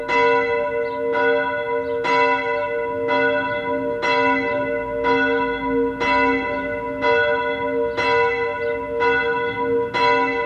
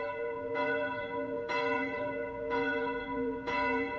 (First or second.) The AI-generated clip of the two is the second